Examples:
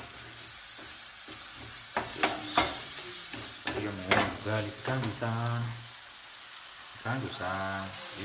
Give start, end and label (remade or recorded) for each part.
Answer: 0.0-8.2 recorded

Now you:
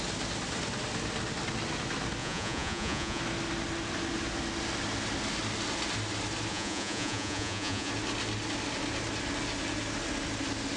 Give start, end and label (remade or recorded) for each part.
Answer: 0.0-2.2 recorded; 2.2-3.2 remade; 3.2-6.5 recorded; 6.5-7.9 remade; 7.9-10.8 recorded